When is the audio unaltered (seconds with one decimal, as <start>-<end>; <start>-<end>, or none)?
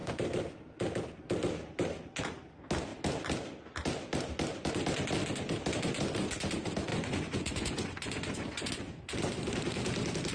0.0-6.9; 8.7-10.3